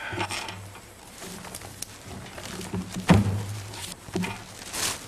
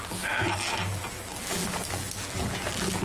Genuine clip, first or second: first